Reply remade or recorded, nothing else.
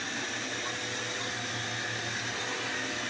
recorded